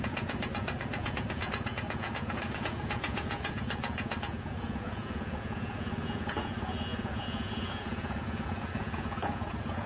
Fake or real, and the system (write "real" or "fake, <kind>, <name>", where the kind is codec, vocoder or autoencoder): fake, vocoder, Vocos